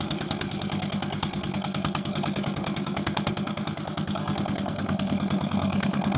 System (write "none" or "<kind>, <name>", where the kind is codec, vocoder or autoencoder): codec, SNAC